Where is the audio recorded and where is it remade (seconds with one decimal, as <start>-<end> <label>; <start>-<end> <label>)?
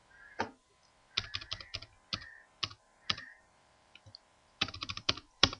0.0-3.4 recorded; 3.4-5.6 remade